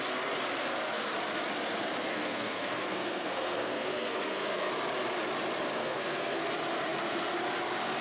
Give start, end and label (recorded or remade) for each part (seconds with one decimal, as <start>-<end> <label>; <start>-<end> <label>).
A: 0.0-2.1 recorded; 2.1-4.7 remade; 4.7-5.8 recorded; 5.8-6.4 remade; 6.4-8.0 recorded